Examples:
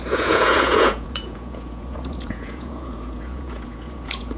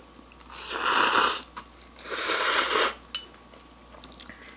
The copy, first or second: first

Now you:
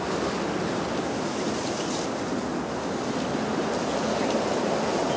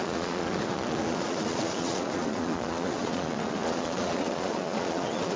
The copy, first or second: second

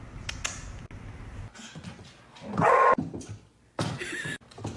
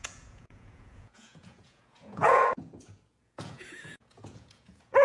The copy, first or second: second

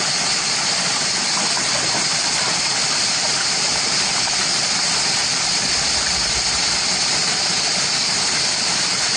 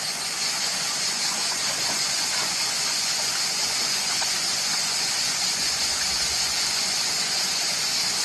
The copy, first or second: second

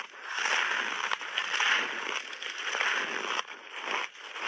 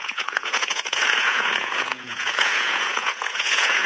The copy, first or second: second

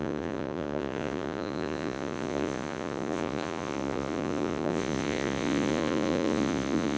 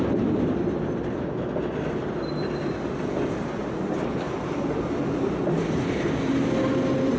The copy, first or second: first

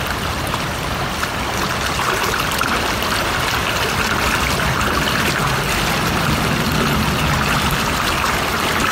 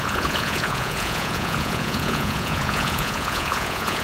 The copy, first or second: second